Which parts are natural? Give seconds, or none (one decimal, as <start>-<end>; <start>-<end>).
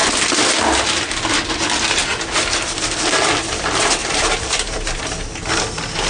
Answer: 0.0-6.1